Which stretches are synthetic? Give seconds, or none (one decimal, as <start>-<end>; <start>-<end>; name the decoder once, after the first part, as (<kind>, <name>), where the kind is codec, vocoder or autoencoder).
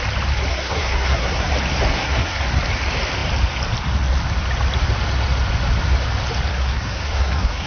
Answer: 0.5-1.5 (codec, SNAC); 1.9-2.4; 6.5-7.7